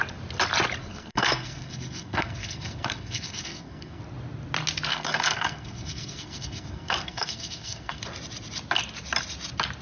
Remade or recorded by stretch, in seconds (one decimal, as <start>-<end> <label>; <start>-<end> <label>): 0.0-0.8 recorded; 0.8-4.0 remade; 4.0-4.9 recorded; 4.9-8.0 remade; 8.0-9.8 recorded

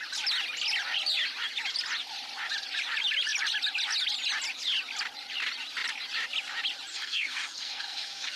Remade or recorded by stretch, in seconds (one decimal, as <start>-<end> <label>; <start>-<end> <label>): 0.0-6.9 recorded; 6.9-8.4 remade